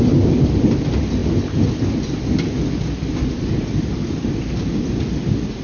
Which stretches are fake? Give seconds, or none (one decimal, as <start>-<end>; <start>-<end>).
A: none